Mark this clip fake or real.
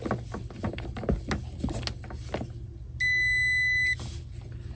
real